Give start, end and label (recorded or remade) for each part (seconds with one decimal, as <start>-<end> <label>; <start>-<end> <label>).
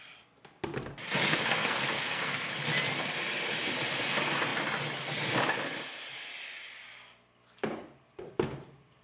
0.0-1.3 recorded; 1.3-2.5 remade; 2.5-9.0 recorded